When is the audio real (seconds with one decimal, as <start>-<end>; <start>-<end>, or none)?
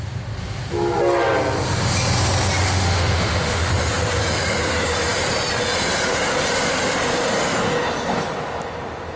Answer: 0.0-2.6; 3.7-9.2